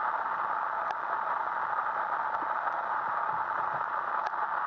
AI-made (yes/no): no